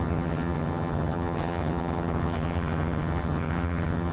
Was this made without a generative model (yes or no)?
no